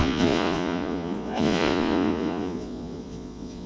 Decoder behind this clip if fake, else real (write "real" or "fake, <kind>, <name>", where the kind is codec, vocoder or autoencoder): fake, vocoder, Vocos